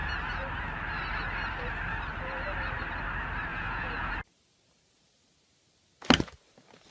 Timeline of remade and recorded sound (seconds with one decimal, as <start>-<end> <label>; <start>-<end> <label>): 0.0-3.5 recorded; 3.5-4.1 remade; 4.1-6.9 recorded